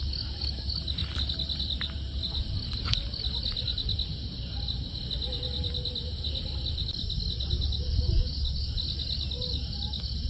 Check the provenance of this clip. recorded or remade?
recorded